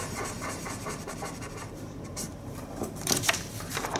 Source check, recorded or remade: remade